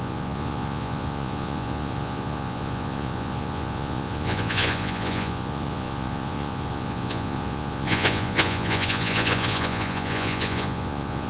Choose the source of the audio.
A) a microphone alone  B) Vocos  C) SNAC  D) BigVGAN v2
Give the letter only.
B